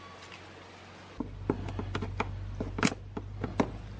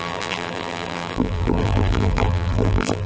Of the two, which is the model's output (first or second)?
second